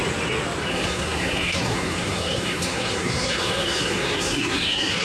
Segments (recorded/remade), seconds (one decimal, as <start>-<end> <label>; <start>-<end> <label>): 0.0-0.7 recorded; 0.7-5.0 remade